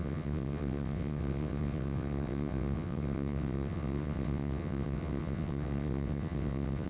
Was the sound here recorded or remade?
remade